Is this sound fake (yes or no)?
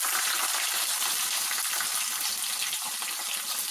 no